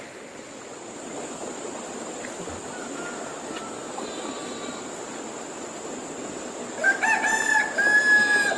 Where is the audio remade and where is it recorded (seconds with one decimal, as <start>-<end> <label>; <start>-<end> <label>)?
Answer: 0.0-8.6 recorded